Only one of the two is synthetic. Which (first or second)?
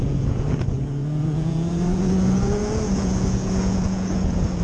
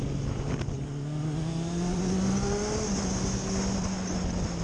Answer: first